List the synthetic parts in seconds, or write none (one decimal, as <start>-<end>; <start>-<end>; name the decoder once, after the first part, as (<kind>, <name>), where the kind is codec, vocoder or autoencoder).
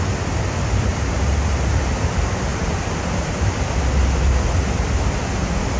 0.9-2.1 (vocoder, BigVGAN v2); 2.5-3.5